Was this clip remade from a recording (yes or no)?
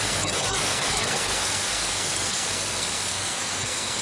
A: yes